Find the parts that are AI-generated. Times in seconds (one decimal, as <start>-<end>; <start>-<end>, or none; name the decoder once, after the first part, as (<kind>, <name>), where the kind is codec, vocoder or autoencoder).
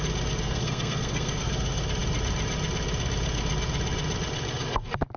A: 0.4-1.5 (codec, SNAC)